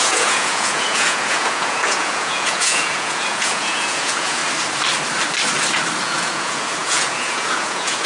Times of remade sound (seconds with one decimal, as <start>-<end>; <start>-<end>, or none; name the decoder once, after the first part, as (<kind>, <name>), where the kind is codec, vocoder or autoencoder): 0.0-4.4 (vocoder, Vocos); 6.0-8.1